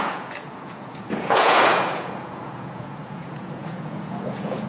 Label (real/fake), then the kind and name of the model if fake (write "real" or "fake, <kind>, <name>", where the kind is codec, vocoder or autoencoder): fake, vocoder, Vocos